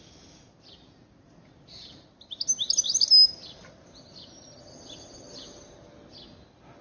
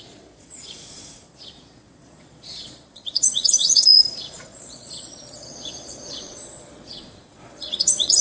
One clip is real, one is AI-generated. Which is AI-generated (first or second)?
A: second